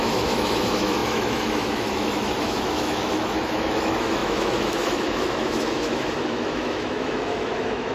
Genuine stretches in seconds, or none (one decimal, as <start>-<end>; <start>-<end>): none